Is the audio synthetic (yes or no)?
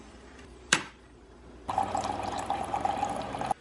yes